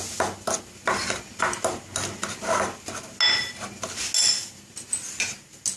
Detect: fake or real real